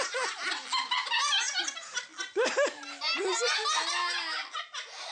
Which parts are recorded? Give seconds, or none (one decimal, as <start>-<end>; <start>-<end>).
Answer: 0.0-5.1